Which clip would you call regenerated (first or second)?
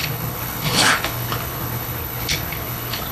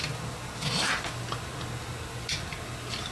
first